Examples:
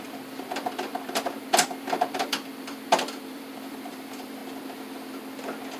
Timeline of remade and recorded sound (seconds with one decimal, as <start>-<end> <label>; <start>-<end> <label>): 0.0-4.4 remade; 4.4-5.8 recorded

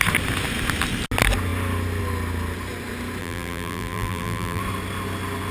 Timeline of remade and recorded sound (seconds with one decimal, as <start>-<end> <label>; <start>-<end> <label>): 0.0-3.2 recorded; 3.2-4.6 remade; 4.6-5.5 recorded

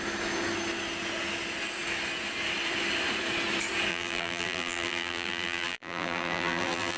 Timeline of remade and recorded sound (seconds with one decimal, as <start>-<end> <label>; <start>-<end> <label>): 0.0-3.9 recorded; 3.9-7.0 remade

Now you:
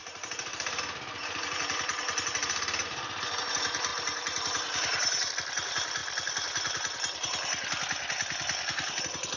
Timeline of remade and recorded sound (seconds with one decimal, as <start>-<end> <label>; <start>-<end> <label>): 0.0-0.8 remade; 0.8-3.9 recorded; 3.9-5.3 remade; 5.3-9.4 recorded

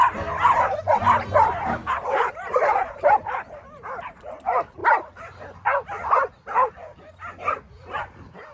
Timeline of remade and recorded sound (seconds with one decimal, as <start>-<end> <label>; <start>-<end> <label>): 0.0-1.8 recorded; 1.8-3.7 remade; 3.7-8.5 recorded

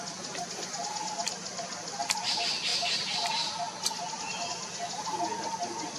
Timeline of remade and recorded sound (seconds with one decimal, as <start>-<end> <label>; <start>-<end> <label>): 0.0-1.2 recorded; 1.2-2.3 remade; 2.3-2.7 recorded; 2.7-3.5 remade; 3.5-6.0 recorded